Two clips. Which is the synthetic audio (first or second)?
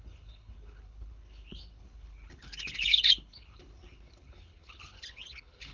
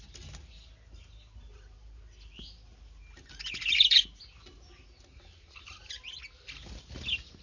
first